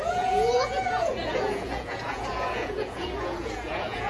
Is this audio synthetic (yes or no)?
yes